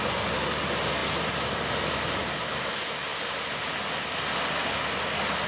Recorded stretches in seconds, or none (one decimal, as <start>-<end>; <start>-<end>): 0.0-3.1; 3.7-5.5